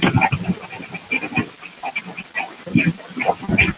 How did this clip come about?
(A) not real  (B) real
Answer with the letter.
B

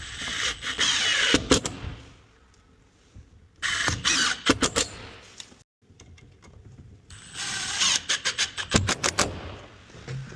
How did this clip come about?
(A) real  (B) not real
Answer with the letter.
A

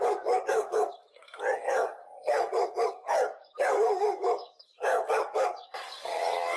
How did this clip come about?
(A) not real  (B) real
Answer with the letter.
A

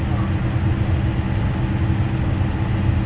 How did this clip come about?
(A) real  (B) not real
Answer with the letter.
A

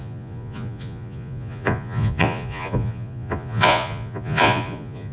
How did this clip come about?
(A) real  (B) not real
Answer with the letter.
B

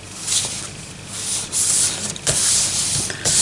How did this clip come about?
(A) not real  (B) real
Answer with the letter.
A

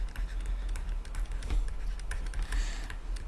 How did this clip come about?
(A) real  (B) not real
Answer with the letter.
A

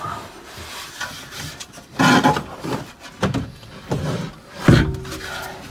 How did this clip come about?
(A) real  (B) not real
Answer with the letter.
A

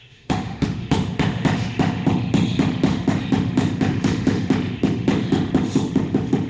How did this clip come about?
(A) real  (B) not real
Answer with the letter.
B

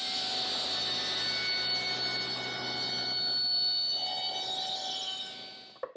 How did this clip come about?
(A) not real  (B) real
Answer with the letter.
B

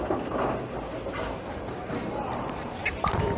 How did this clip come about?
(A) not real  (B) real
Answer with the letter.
B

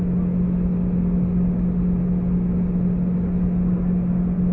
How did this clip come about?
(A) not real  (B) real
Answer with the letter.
B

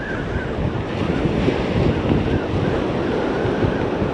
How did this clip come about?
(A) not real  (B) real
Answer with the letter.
B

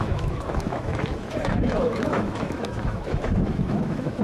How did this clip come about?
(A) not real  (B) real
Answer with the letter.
A